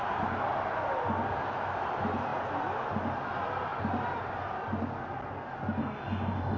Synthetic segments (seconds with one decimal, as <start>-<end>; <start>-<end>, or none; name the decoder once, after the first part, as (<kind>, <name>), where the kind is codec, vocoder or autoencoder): 5.8-6.6 (codec, DAC)